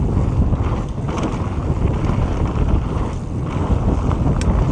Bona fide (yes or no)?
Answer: yes